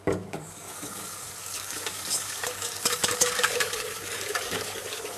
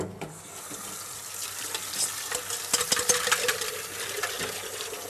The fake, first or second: first